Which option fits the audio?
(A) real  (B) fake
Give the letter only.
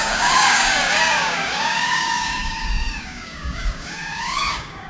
B